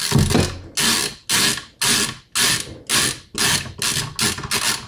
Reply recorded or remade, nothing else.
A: recorded